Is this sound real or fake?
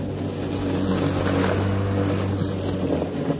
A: real